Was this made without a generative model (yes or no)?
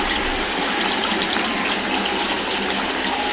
yes